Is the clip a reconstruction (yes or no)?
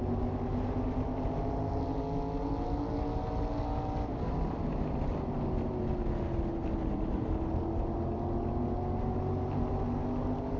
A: no